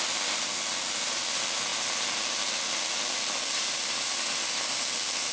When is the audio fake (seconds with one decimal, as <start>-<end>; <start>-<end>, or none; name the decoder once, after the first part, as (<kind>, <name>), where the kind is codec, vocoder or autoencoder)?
0.0-5.3 (vocoder, BigVGAN v2)